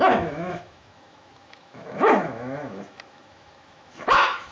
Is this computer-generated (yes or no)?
yes